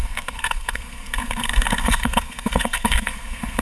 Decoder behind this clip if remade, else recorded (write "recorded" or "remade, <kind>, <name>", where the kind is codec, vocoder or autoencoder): remade, codec, SNAC